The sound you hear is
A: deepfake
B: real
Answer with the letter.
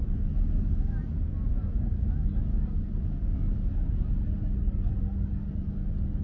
B